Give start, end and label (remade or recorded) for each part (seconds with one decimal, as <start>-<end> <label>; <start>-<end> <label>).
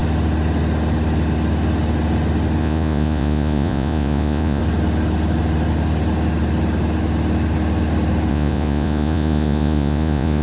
0.0-2.6 recorded; 2.6-4.6 remade; 4.6-8.3 recorded; 8.3-10.4 remade